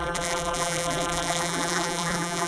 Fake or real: fake